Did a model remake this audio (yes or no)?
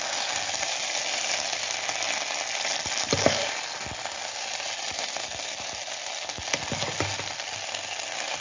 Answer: no